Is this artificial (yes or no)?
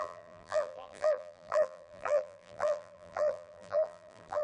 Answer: yes